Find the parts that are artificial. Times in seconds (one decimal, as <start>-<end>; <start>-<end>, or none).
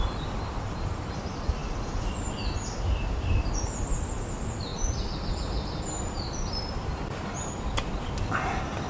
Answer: none